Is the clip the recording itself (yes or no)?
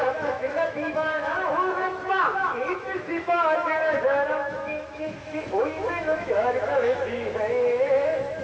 no